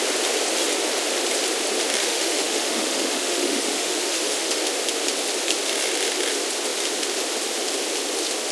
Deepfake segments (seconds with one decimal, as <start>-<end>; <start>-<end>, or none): 2.0-4.6